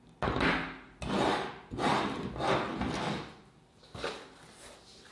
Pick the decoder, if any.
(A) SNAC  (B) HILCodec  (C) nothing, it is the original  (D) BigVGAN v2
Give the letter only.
C